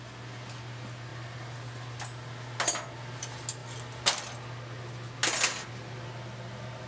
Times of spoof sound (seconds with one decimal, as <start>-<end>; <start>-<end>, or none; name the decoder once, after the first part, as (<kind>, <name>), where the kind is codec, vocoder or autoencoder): none

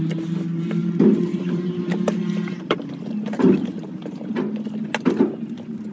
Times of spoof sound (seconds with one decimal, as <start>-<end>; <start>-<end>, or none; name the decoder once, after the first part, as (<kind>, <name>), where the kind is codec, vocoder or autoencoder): 0.8-4.3 (vocoder, BigVGAN v2)

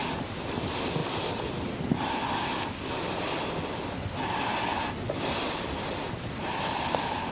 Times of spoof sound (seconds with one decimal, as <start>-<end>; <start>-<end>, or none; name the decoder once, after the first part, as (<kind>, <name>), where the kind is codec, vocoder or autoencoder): none

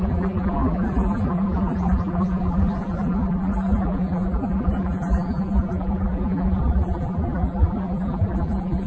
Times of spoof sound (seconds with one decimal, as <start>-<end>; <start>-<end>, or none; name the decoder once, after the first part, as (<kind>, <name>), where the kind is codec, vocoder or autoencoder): 0.0-8.9 (vocoder, BigVGAN v2)